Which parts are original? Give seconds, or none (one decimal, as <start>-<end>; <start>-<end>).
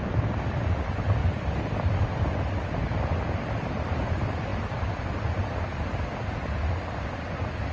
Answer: 0.0-7.7